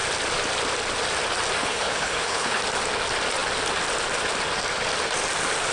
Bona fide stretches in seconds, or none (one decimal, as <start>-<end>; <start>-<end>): 0.0-1.6; 2.6-5.7